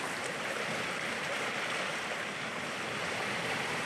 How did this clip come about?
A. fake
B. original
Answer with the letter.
B